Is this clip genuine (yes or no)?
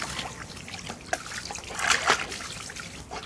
yes